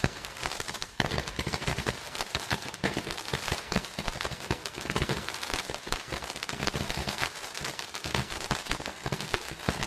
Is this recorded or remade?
remade